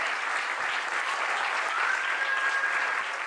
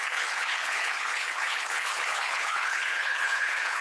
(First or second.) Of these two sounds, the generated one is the second